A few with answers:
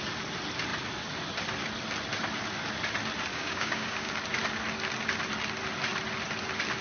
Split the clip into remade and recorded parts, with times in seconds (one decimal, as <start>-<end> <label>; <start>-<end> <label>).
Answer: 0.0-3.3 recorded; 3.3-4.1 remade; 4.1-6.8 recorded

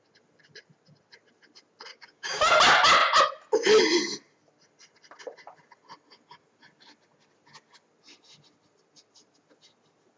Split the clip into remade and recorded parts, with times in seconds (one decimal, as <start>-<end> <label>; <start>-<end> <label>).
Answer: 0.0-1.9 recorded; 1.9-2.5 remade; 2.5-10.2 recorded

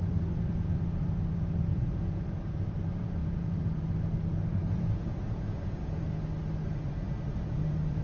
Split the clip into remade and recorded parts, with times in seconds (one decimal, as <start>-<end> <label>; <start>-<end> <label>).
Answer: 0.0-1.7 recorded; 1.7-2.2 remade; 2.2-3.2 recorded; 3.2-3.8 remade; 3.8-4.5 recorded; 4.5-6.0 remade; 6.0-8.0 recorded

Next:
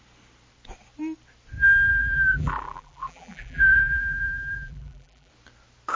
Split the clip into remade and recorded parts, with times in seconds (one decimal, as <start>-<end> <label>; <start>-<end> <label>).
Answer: 0.0-1.9 recorded; 1.9-5.3 remade; 5.3-6.0 recorded

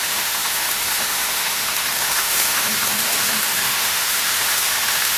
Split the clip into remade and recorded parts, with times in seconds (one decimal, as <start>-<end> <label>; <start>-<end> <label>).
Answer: 0.0-5.2 remade

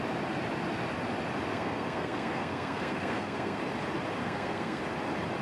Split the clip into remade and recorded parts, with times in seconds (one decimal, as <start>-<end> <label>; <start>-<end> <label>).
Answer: 0.0-1.5 recorded; 1.5-3.6 remade; 3.6-4.2 recorded; 4.2-4.8 remade; 4.8-5.4 recorded

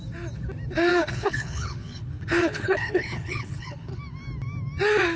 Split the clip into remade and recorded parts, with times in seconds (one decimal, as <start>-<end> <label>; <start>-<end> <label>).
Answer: 0.0-0.9 recorded; 0.9-4.0 remade; 4.0-5.2 recorded

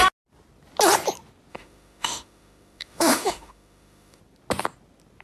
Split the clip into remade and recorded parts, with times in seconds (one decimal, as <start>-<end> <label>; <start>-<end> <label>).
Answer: 0.0-1.5 recorded; 1.5-4.2 remade; 4.2-5.2 recorded